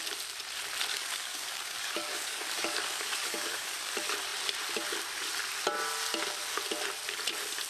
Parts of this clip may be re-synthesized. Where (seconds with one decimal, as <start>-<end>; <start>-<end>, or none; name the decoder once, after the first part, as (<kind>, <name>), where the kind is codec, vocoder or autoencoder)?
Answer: 0.9-3.9 (codec, DAC)